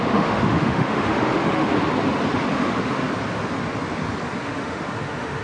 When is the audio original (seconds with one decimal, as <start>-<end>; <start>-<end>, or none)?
1.7-2.3; 3.0-4.4